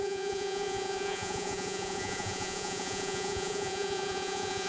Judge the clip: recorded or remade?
remade